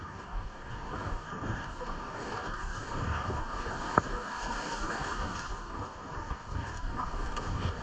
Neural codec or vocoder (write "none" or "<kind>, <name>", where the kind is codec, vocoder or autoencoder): codec, DAC